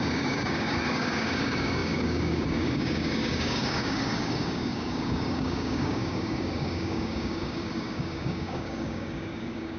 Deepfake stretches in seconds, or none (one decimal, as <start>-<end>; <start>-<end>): 0.0-9.8